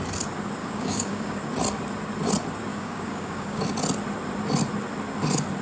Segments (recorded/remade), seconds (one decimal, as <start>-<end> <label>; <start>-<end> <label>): 0.0-0.6 recorded; 0.6-1.4 remade; 1.4-2.7 recorded; 2.7-3.6 remade; 3.6-5.6 recorded

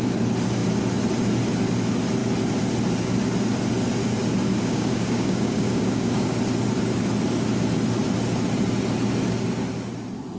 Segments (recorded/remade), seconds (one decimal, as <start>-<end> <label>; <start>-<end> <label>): 0.0-4.5 recorded; 4.5-6.4 remade; 6.4-10.4 recorded

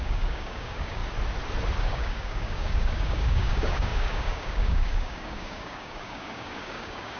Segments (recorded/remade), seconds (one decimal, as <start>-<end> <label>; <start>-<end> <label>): 0.0-1.0 remade; 1.0-1.8 recorded; 1.8-7.2 remade